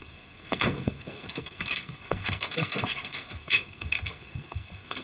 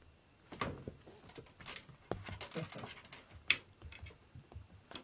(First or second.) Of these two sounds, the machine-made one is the first